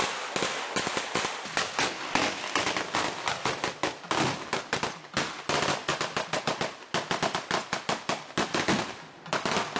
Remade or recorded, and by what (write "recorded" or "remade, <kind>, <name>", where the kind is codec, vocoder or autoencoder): recorded